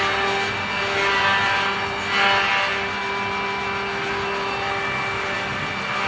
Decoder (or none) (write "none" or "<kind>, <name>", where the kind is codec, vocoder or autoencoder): none